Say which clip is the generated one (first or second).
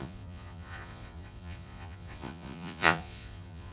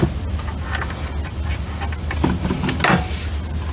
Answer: first